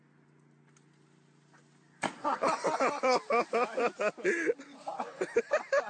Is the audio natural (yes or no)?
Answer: yes